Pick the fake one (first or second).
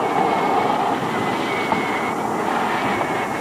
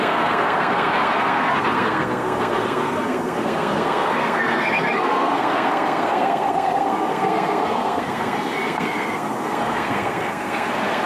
second